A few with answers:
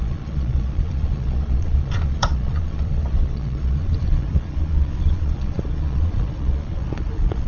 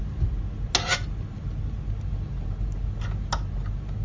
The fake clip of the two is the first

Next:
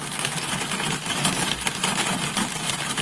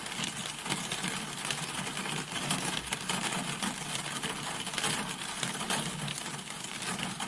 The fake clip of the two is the first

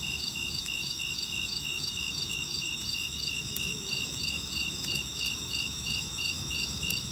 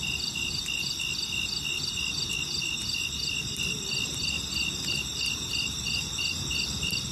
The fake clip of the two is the first